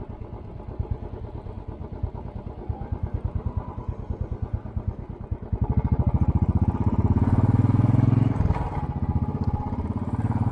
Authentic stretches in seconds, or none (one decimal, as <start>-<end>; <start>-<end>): 0.0-10.5